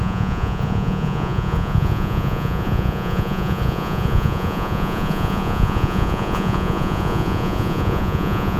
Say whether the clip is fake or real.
fake